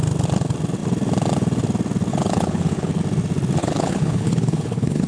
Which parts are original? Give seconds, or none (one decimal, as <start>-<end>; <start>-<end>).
0.0-2.1; 3.0-3.6